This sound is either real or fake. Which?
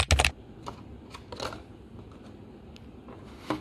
real